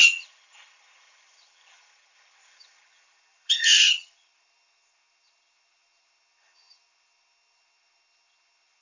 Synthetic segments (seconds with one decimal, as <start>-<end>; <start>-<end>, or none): 0.0-8.8